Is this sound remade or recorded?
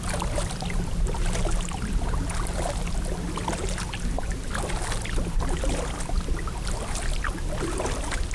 recorded